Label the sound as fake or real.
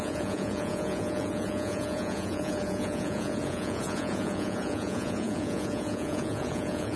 fake